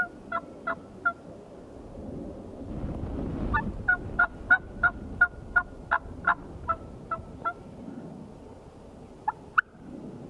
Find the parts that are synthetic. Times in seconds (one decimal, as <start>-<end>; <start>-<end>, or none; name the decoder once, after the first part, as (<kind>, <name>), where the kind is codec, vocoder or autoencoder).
none